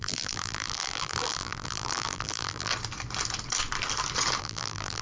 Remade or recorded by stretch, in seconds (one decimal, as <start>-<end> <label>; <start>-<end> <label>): 0.0-2.7 remade; 2.7-4.4 recorded; 4.4-5.0 remade